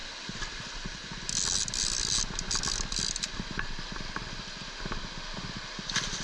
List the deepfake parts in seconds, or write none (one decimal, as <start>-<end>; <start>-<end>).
none